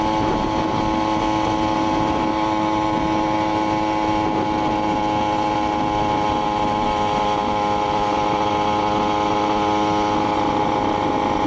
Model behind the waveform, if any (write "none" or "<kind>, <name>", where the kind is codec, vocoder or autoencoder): none